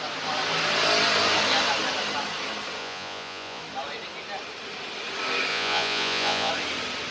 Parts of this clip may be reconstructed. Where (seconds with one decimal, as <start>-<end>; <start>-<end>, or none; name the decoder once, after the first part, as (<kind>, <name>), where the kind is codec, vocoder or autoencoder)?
2.8-3.6 (vocoder, Vocos); 5.5-6.5